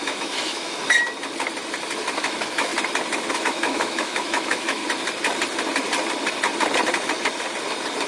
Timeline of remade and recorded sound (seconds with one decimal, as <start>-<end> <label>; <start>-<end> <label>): 0.0-0.8 remade; 0.8-2.2 recorded; 2.2-2.7 remade; 2.7-3.3 recorded; 3.3-4.8 remade; 4.8-8.1 recorded